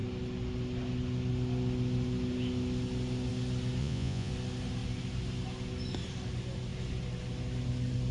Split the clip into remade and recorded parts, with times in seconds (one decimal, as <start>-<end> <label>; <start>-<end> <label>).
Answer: 0.0-3.8 recorded; 3.8-4.3 remade; 4.3-8.1 recorded